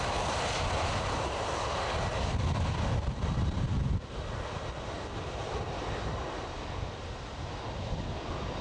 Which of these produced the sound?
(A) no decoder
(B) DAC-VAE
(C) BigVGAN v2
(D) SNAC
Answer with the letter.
A